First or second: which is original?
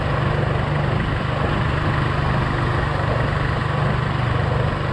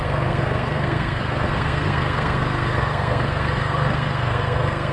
first